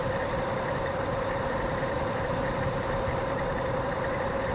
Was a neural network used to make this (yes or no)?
yes